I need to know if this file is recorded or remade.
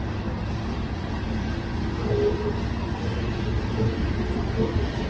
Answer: recorded